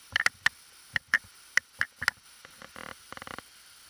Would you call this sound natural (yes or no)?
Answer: yes